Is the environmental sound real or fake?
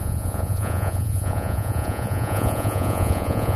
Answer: fake